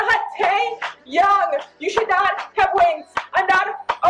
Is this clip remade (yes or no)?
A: no